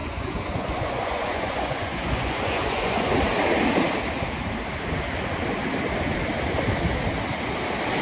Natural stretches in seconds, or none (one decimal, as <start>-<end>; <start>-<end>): 3.1-8.0